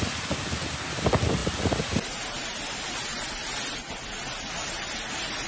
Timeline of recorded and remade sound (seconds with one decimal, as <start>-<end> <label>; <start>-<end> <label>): 0.0-5.5 recorded